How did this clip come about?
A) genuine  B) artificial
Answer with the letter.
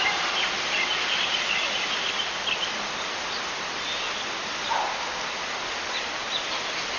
A